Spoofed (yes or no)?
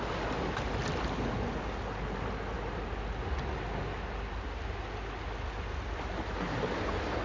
no